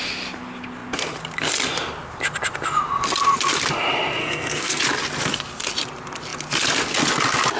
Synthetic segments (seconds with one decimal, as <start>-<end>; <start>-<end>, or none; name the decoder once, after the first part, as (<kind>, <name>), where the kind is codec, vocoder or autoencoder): 4.2-4.8 (codec, SNAC)